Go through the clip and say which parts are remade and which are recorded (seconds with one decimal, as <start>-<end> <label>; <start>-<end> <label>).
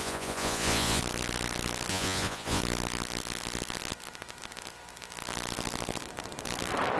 0.0-1.0 remade; 1.0-1.9 recorded; 1.9-2.6 remade; 2.6-7.0 recorded